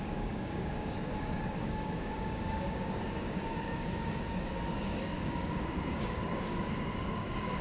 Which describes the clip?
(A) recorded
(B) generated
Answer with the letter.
B